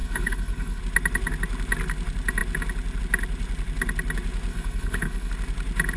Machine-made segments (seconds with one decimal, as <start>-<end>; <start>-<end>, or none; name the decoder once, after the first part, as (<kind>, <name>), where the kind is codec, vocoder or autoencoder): 0.0-0.8 (codec, HILCodec); 4.5-5.3